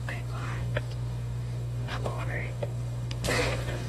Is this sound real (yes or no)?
no